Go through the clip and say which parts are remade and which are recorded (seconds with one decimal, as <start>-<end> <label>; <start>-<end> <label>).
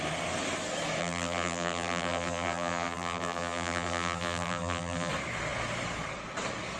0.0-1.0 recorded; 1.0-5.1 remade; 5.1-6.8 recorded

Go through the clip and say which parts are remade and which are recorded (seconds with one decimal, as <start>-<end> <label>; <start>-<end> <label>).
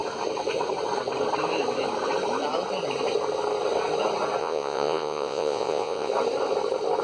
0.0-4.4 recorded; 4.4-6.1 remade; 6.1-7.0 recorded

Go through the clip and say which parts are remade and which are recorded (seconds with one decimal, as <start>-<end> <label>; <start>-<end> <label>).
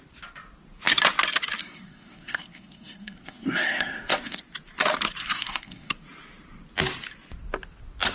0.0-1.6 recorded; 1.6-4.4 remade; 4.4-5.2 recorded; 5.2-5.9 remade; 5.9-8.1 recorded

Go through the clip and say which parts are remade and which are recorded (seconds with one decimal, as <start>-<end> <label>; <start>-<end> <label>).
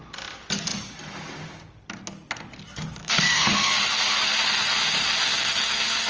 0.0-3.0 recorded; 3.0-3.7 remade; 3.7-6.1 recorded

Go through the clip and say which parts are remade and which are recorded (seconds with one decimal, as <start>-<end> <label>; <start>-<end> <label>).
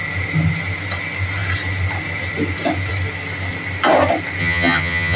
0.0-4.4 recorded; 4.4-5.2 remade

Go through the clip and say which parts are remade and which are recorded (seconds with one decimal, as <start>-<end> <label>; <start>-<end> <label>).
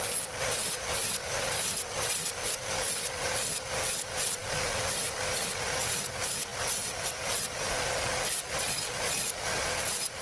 0.0-10.2 recorded